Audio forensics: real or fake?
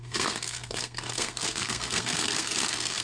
fake